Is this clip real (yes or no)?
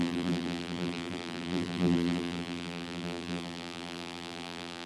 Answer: no